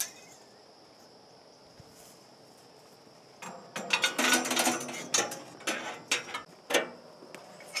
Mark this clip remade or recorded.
recorded